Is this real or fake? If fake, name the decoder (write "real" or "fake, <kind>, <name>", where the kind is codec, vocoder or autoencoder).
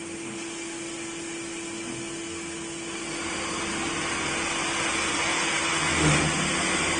real